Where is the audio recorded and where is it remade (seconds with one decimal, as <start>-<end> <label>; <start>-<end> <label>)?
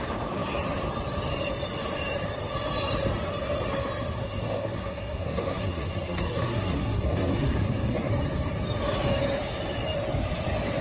0.0-4.2 recorded; 4.2-8.1 remade; 8.1-10.8 recorded